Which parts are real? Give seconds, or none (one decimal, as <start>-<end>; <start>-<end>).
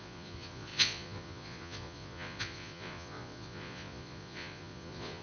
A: none